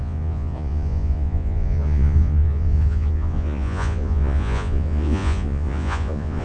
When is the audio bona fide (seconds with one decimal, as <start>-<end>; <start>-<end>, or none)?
none